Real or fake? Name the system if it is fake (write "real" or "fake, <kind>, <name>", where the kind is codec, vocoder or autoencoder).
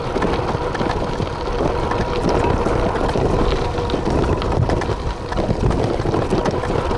real